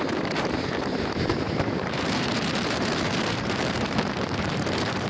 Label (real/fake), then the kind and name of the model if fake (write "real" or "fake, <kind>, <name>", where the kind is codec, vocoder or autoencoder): fake, vocoder, BigVGAN v2